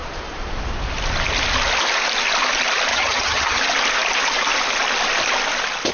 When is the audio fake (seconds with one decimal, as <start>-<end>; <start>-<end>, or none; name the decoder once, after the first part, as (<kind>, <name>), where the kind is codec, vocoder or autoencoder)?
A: 2.9-3.6 (vocoder, HiFi-GAN)